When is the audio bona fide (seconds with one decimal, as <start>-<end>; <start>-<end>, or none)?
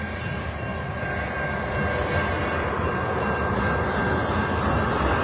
0.0-5.2